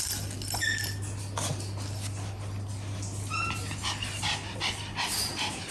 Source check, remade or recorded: recorded